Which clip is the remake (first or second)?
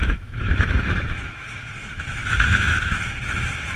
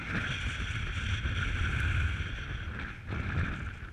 first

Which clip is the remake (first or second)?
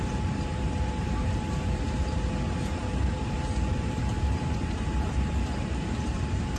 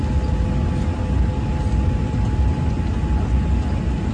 first